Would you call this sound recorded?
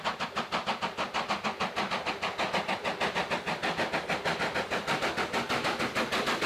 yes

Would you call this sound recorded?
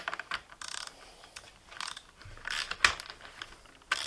yes